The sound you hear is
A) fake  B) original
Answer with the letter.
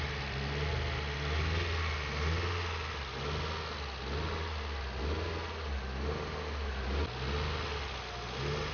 B